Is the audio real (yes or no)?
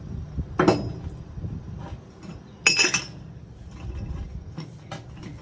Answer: yes